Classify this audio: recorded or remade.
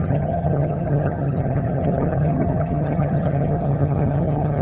remade